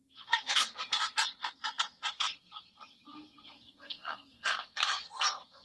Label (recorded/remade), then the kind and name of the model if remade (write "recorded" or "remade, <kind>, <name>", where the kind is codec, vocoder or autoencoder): remade, codec, SNAC